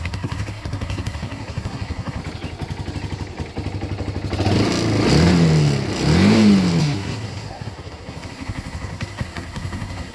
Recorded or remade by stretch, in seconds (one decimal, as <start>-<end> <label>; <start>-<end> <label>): 0.0-2.2 remade; 2.2-6.8 recorded; 6.8-10.1 remade